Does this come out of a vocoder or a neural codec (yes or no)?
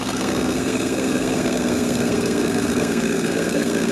yes